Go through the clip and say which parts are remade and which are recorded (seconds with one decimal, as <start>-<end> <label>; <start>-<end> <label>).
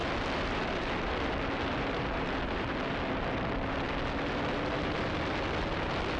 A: 0.0-6.2 recorded